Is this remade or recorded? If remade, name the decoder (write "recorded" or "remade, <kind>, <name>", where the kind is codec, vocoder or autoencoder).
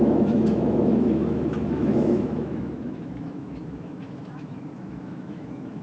remade, autoencoder, DAC-VAE